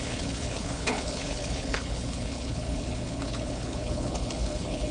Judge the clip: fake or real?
fake